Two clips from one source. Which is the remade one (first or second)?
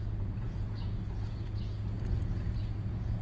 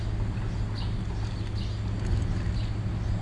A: first